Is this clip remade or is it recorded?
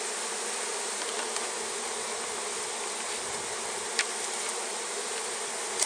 recorded